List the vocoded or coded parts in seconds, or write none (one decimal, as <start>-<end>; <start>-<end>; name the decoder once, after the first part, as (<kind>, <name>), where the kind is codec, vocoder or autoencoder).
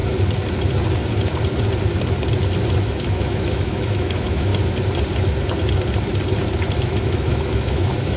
2.8-4.5 (autoencoder, DAC-VAE); 6.7-8.2